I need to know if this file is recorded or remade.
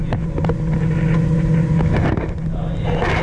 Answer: recorded